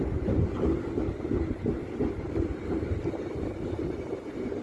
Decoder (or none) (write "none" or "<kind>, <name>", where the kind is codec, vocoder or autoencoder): none